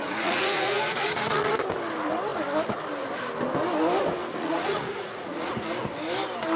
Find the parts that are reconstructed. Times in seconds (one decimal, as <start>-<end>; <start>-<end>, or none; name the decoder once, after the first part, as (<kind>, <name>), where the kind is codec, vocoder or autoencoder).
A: 0.0-1.5 (vocoder, Vocos); 4.2-5.5